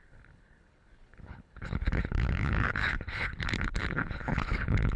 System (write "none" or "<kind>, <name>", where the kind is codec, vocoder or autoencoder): codec, HILCodec